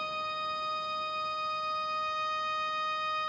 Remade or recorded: recorded